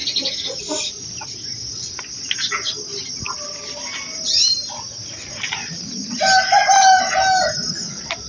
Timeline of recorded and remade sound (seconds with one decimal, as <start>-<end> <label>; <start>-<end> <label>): 0.0-0.6 remade; 0.6-8.3 recorded